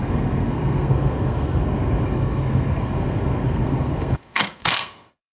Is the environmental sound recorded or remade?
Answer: remade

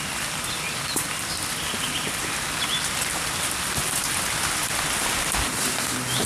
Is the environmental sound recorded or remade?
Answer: recorded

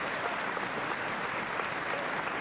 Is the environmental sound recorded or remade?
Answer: recorded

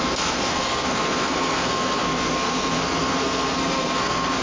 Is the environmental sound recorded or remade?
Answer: remade